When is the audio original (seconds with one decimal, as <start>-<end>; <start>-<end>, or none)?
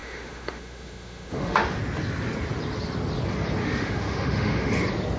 1.8-3.6; 4.7-5.2